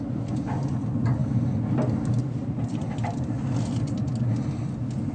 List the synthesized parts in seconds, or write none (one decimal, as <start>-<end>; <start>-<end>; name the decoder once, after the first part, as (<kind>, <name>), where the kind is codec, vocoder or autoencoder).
none